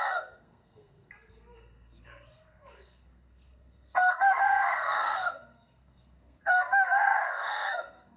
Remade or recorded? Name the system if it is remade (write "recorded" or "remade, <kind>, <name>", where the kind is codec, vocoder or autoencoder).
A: remade, codec, SNAC